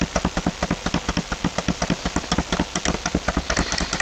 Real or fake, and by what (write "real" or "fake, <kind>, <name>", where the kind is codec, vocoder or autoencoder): real